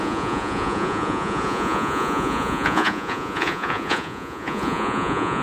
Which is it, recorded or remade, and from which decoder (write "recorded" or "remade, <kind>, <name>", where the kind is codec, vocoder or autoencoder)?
remade, vocoder, Vocos